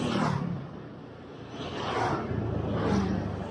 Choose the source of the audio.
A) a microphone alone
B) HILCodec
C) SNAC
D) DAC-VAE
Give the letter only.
A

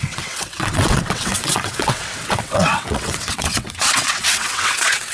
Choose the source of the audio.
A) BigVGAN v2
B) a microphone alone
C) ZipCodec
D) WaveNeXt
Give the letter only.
D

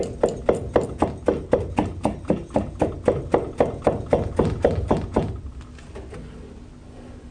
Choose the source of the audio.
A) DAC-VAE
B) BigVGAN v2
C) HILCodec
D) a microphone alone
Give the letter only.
D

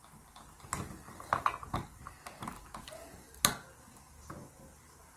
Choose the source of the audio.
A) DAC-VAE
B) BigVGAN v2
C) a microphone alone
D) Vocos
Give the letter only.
C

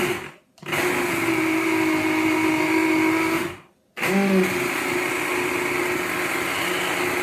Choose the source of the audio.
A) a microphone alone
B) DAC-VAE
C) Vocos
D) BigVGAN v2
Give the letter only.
A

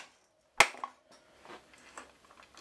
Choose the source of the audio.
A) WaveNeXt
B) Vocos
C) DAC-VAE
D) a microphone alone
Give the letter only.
D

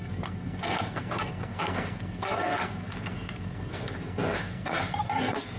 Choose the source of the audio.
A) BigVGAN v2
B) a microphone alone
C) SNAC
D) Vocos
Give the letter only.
C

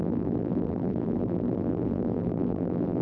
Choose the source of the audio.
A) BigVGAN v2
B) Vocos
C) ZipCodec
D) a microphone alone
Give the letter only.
A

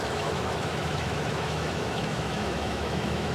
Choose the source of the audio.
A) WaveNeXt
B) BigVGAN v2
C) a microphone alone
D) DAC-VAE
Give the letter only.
D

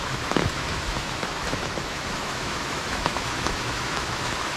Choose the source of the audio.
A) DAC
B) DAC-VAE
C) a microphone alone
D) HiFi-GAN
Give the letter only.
B